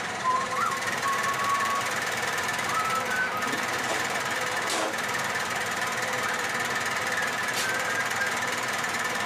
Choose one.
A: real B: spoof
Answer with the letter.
B